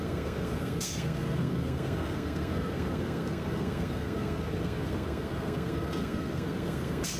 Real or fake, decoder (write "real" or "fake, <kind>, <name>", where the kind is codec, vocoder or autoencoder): fake, codec, SNAC